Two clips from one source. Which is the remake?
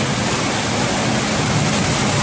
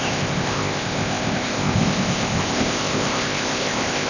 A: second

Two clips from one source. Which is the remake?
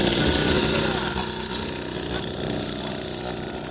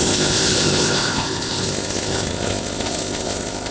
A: second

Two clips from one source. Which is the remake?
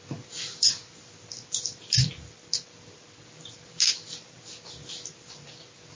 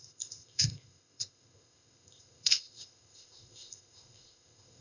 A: second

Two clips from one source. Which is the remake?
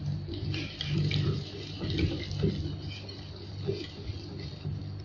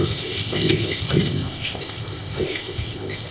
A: second